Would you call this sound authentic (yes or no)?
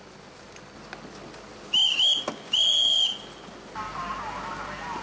yes